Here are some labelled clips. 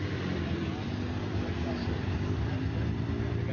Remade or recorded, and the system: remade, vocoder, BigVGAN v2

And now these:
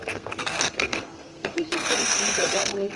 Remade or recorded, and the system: remade, codec, SNAC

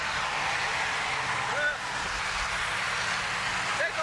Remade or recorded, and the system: recorded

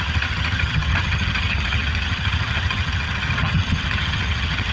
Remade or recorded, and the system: remade, vocoder, HiFi-GAN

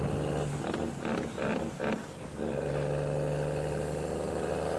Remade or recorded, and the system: recorded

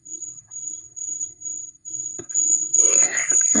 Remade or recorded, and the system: remade, codec, SNAC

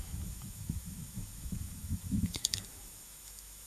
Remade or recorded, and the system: remade, autoencoder, DAC-VAE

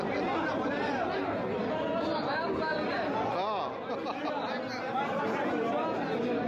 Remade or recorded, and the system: recorded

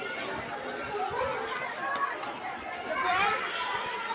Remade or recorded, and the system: recorded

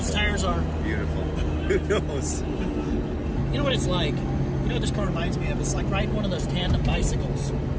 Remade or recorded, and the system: recorded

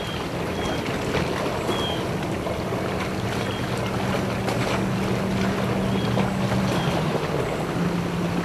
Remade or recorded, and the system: recorded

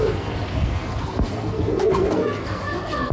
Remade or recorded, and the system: remade, codec, SNAC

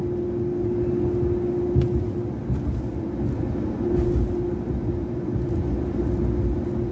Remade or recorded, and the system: recorded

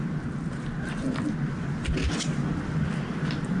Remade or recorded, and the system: recorded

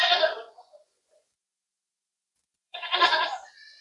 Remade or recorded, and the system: remade, vocoder, Vocos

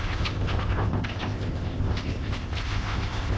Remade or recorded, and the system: remade, codec, ZipCodec